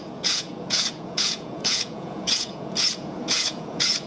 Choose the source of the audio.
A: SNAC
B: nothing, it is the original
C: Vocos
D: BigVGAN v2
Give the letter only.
C